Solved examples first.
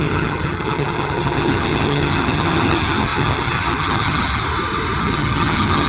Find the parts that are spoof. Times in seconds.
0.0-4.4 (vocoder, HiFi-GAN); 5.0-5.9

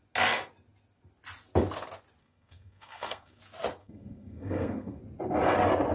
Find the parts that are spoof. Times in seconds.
2.2-3.4 (codec, SNAC); 3.8-5.0

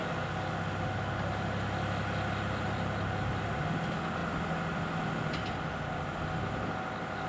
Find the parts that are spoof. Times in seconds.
none

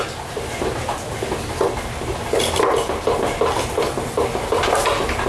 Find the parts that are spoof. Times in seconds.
none

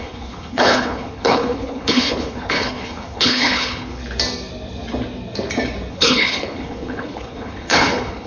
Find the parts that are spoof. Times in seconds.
0.0-4.0 (codec, HILCodec); 5.9-8.3

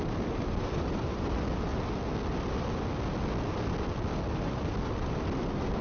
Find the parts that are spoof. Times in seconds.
0.0-1.7 (vocoder, BigVGAN v2); 4.3-5.8

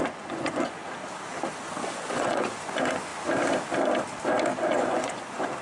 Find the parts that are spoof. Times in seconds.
0.0-0.8 (vocoder, Vocos); 1.6-3.1; 4.6-5.6